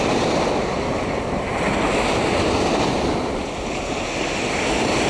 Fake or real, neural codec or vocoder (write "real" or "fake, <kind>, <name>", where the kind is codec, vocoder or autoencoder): real